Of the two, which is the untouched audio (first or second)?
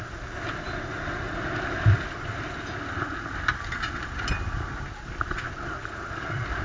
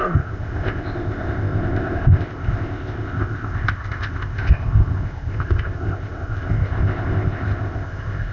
first